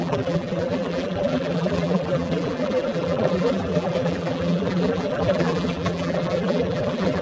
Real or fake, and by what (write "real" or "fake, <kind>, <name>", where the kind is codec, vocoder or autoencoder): fake, vocoder, BigVGAN v2